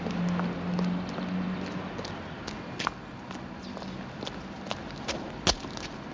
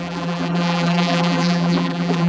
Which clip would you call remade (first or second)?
second